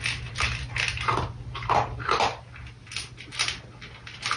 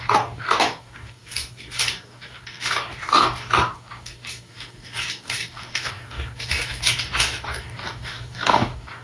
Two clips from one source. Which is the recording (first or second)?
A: first